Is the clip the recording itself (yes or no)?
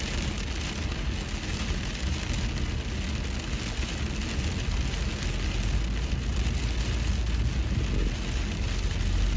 yes